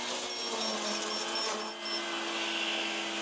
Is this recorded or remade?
recorded